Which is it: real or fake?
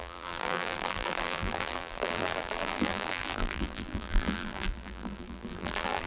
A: fake